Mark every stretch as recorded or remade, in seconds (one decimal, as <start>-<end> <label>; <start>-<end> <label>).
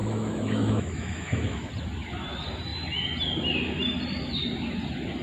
0.0-1.7 remade; 1.7-5.2 recorded